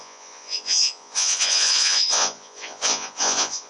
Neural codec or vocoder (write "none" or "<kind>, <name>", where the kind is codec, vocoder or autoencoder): vocoder, Vocos